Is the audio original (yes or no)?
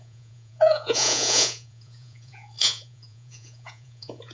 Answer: no